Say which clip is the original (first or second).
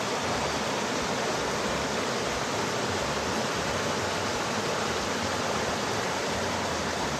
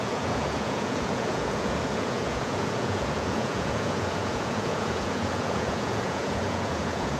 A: first